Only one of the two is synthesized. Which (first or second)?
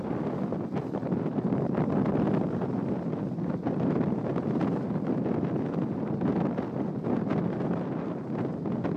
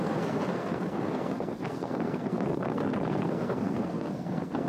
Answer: second